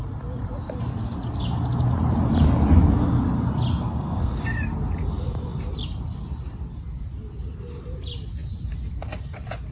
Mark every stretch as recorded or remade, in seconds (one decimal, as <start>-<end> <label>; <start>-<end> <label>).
0.0-3.7 recorded; 3.7-4.4 remade; 4.4-9.7 recorded